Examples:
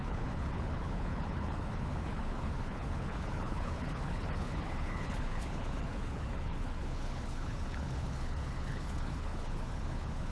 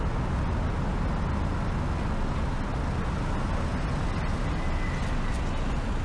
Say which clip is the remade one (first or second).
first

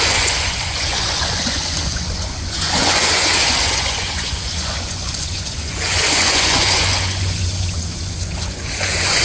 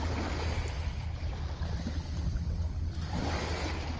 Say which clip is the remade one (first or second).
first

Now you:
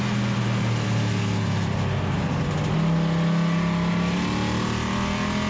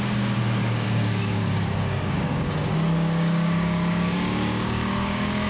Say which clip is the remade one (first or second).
second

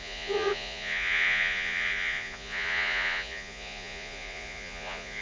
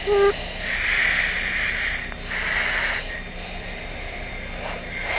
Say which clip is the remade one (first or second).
first